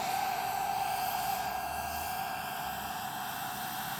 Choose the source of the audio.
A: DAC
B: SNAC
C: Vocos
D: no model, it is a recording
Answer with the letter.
D